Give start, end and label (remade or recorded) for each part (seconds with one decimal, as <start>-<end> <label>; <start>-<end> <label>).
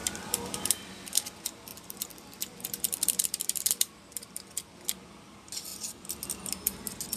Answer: 0.0-0.7 remade; 0.7-1.7 recorded; 1.7-4.9 remade; 4.9-7.2 recorded